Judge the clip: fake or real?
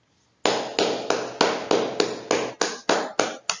real